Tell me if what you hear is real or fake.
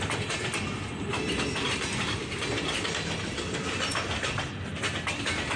real